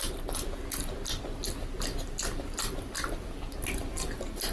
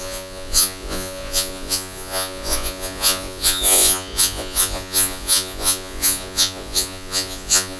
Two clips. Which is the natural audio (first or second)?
first